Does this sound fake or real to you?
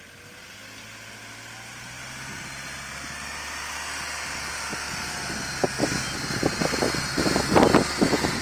real